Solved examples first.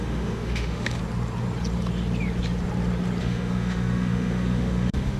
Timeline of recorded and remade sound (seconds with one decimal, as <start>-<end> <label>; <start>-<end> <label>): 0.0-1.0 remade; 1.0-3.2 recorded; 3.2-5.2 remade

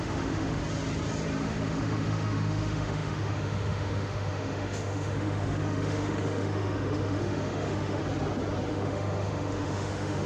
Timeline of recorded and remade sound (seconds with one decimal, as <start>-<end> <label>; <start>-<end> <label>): 0.0-0.6 remade; 0.6-1.4 recorded; 1.4-8.0 remade; 8.0-8.7 recorded; 8.7-10.3 remade

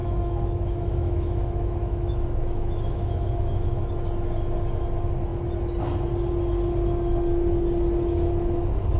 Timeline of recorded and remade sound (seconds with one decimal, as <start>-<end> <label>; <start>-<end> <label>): 0.0-3.8 remade; 3.8-9.0 recorded

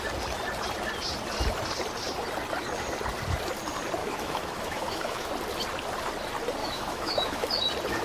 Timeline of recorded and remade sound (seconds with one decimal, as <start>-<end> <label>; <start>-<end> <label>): 0.0-4.0 recorded; 4.0-5.3 remade; 5.3-6.6 recorded; 6.6-7.5 remade; 7.5-8.0 recorded